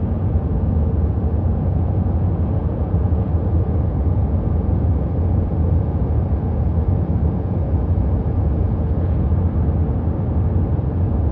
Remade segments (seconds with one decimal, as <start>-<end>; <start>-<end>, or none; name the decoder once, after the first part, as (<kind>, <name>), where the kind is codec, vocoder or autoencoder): 0.0-9.3 (vocoder, Vocos); 10.5-11.3